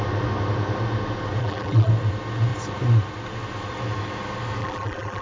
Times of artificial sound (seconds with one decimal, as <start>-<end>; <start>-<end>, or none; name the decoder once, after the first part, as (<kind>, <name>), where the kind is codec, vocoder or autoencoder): 1.4-1.9 (vocoder, BigVGAN v2); 4.6-5.2